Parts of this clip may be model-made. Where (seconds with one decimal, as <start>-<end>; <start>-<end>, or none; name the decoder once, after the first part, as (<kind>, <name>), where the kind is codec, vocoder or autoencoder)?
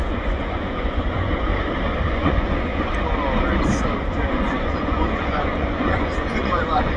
0.0-1.5 (vocoder, Vocos); 2.1-2.9; 4.3-7.0